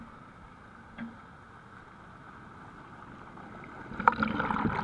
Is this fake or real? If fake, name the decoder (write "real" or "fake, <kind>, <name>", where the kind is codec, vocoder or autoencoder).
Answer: real